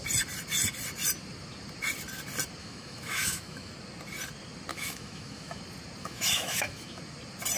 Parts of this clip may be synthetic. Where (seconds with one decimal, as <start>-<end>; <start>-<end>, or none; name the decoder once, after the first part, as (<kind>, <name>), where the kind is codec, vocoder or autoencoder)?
2.6-3.7 (autoencoder, DAC-VAE); 4.7-5.6; 6.0-7.0